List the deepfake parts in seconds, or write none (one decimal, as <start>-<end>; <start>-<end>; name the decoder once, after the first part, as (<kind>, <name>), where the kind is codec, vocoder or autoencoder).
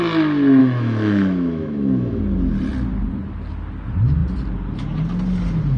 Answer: 0.6-2.2 (autoencoder, DAC-VAE)